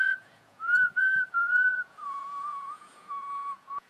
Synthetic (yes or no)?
yes